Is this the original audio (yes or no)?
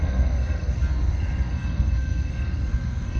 no